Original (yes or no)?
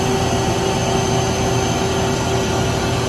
yes